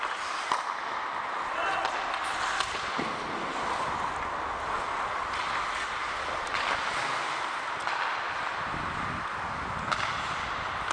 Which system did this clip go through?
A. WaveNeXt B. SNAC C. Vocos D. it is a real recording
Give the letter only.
D